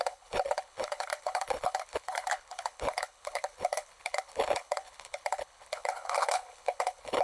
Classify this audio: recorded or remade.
remade